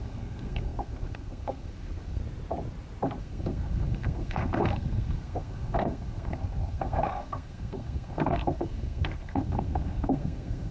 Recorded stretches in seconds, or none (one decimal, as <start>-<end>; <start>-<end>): 2.2-3.2